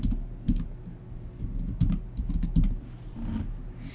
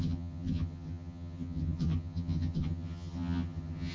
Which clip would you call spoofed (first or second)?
second